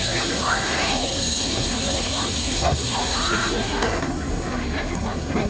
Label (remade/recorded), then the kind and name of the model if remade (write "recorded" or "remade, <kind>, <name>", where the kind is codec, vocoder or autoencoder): remade, codec, SNAC